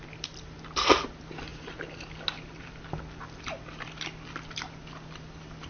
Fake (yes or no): no